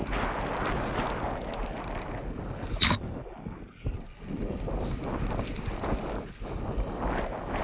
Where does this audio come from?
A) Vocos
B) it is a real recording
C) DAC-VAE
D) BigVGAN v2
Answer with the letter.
B